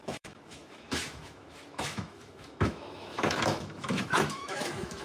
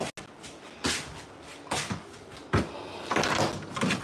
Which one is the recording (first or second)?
second